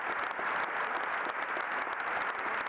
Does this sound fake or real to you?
real